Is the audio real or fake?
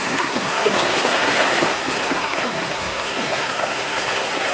fake